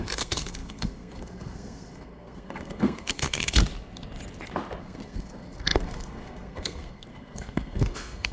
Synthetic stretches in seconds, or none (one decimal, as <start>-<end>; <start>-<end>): 0.0-3.6; 4.8-8.3